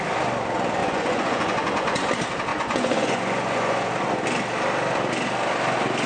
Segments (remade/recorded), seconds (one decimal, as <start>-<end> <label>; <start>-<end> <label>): 0.0-0.8 recorded; 0.8-2.1 remade; 2.1-2.5 recorded; 2.5-3.9 remade; 3.9-6.1 recorded